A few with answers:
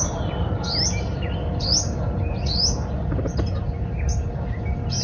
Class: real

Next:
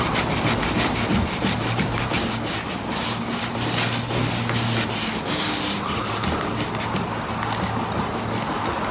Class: real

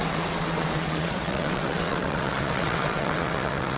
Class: fake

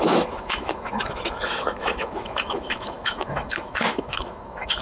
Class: fake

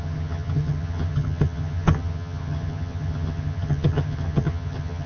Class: fake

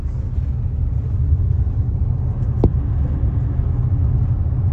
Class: real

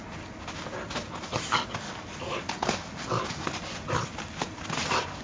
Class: real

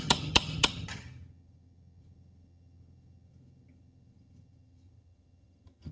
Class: fake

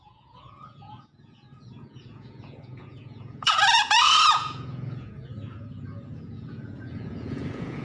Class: fake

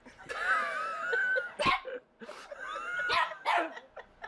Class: real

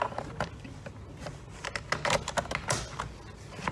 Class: real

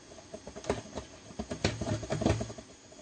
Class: real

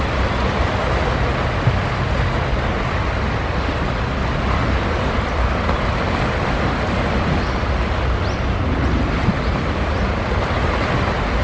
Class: real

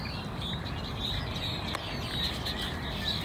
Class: real